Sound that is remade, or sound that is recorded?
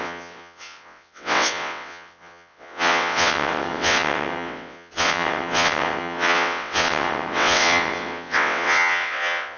remade